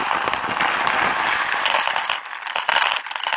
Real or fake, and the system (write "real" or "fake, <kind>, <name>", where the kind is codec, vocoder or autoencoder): real